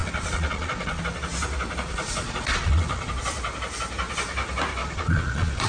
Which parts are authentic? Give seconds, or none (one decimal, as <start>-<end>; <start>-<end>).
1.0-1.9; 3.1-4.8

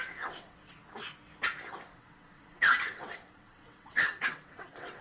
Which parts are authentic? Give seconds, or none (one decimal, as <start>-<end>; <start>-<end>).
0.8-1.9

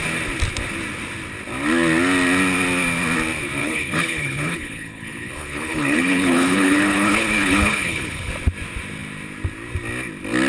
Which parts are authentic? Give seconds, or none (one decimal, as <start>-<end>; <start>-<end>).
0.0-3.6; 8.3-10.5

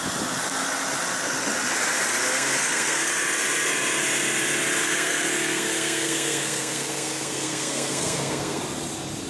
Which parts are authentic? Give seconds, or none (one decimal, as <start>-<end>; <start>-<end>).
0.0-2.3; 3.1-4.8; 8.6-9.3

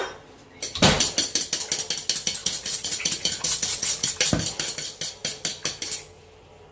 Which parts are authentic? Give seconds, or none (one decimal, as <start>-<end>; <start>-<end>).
0.0-2.4; 4.1-6.7

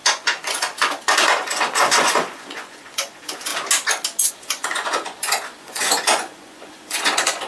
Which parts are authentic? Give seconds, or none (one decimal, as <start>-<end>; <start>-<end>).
3.5-4.3

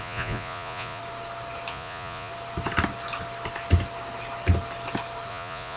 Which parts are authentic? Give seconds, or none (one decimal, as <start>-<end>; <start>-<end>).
1.0-1.7; 2.3-5.3